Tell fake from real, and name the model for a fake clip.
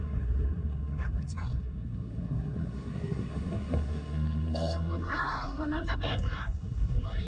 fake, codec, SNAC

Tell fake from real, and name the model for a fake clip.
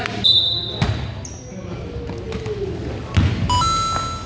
real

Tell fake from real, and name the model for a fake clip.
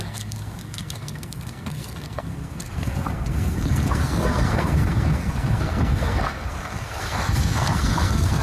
fake, codec, SNAC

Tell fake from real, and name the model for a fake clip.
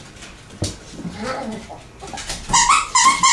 real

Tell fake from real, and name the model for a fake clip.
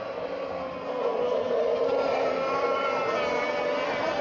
real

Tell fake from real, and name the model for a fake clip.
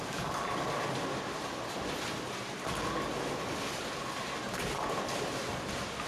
real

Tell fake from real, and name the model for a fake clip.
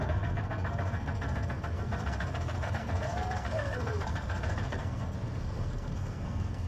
fake, codec, SNAC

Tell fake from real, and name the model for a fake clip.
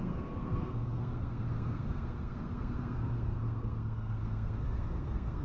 fake, codec, SNAC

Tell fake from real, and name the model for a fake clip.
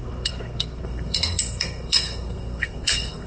fake, codec, SNAC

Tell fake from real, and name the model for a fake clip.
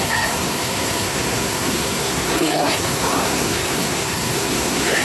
fake, codec, SNAC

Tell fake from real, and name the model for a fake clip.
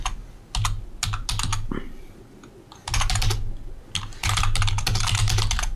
real